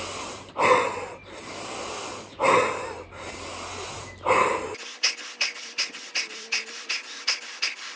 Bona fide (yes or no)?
yes